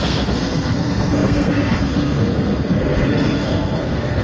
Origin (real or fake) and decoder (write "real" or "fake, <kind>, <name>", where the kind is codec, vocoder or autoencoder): fake, codec, SNAC